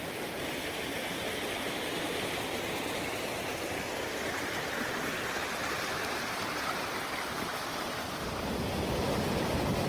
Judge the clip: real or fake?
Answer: fake